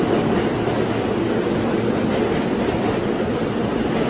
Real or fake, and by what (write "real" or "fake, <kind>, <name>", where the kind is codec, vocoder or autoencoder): real